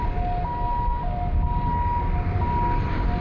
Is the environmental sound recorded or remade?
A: recorded